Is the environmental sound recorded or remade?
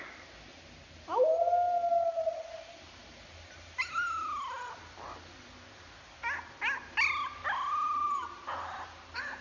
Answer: recorded